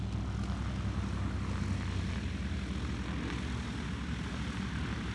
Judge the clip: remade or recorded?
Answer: recorded